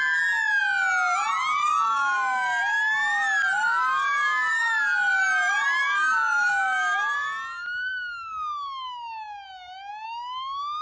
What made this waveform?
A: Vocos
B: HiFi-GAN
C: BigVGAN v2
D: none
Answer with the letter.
D